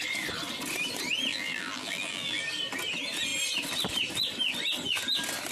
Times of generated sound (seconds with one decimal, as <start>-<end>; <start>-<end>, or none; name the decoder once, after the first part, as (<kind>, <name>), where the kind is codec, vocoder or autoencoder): 1.3-2.4 (vocoder, BigVGAN v2)